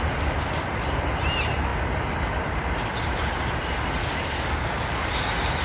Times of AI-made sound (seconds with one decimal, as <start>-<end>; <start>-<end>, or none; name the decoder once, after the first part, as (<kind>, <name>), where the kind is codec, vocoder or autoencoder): 4.0-5.1 (codec, DAC)

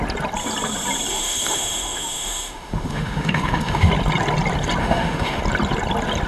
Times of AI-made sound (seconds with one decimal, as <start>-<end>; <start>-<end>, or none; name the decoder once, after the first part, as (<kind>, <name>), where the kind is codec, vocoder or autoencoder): 1.1-3.9 (autoencoder, DAC-VAE); 4.8-5.4

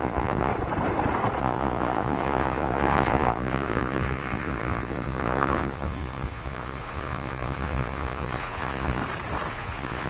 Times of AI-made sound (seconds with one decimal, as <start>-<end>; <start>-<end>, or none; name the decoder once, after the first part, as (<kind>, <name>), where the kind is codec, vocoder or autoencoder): 0.0-0.5 (vocoder, Vocos); 1.4-9.0; 9.5-10.1

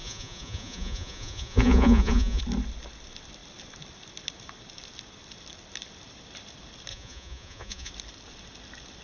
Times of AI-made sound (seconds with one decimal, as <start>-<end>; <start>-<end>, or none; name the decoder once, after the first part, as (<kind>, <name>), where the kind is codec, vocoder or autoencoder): 0.0-2.4 (vocoder, Vocos); 6.9-7.9

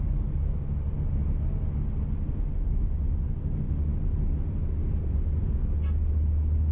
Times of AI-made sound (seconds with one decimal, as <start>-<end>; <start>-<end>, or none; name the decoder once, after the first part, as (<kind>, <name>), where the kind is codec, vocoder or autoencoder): none